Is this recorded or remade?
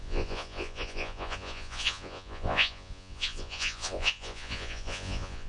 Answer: remade